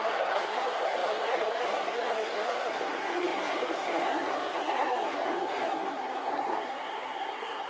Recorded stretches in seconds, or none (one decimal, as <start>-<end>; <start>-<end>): none